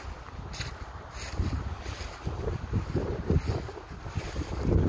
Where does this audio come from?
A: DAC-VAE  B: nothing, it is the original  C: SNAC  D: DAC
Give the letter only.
B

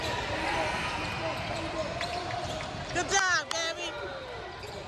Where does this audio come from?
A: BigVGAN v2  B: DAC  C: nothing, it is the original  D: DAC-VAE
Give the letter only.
C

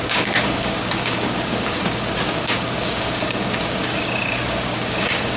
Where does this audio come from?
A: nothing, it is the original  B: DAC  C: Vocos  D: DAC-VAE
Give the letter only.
B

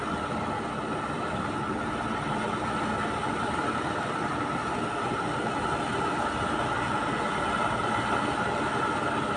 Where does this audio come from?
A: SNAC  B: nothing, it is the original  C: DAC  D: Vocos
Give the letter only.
B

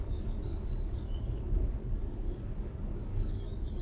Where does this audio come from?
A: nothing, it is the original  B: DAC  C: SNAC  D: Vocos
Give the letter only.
B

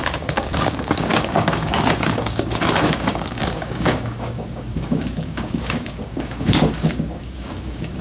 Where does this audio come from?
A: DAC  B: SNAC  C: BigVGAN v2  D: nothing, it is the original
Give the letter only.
A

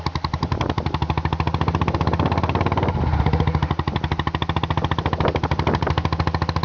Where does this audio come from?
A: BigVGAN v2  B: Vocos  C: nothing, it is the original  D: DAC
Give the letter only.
C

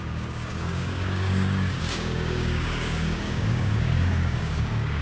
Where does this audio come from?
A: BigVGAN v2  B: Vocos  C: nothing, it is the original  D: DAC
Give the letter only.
D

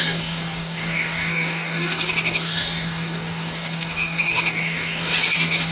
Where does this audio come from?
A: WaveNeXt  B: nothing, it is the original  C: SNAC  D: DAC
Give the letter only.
D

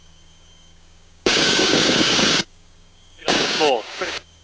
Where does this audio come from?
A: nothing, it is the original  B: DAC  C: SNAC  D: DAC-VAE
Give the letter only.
B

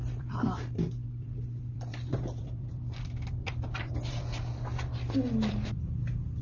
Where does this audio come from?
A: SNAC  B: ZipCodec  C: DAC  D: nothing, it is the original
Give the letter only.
D